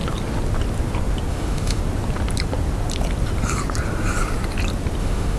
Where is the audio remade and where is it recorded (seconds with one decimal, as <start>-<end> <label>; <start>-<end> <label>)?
0.0-1.3 recorded; 1.3-1.8 remade; 1.8-5.0 recorded; 5.0-5.4 remade

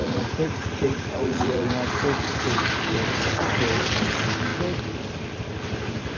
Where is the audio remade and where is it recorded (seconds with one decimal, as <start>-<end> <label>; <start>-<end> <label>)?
0.0-1.7 remade; 1.7-6.2 recorded

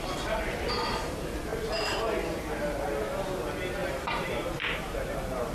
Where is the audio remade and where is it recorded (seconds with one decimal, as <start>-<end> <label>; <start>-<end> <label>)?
0.0-3.8 recorded; 3.8-5.5 remade

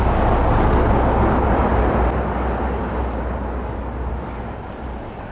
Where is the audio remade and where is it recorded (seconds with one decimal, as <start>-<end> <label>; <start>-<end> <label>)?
0.0-5.3 recorded